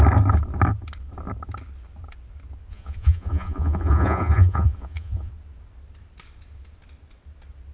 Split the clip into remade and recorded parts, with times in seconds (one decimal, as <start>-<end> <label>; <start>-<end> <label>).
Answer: 0.0-2.7 recorded; 2.7-5.3 remade; 5.3-7.7 recorded